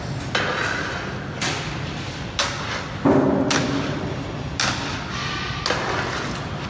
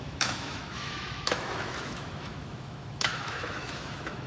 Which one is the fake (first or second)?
second